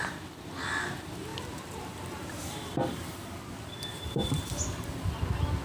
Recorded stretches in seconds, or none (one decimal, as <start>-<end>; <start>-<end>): 0.5-1.3; 4.5-5.6